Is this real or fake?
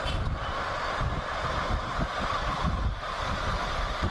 fake